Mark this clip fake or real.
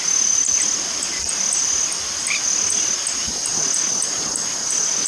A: real